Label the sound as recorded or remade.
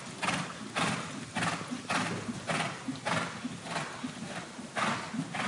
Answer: recorded